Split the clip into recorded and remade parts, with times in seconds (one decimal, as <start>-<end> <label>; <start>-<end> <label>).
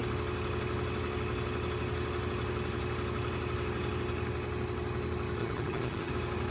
0.0-5.4 recorded; 5.4-6.1 remade; 6.1-6.5 recorded